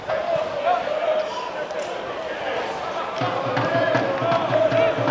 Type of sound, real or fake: real